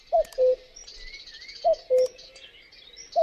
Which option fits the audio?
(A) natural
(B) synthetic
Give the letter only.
A